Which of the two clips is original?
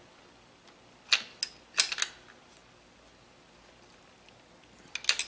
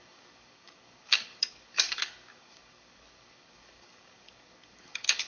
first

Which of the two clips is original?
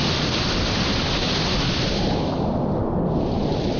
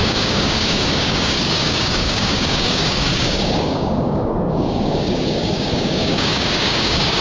first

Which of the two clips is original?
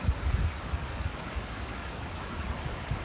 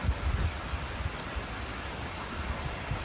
second